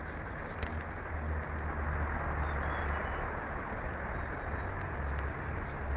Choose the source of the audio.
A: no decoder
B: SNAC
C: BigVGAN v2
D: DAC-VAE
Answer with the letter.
A